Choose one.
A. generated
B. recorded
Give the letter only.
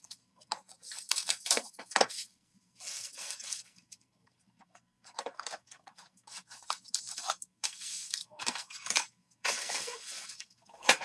A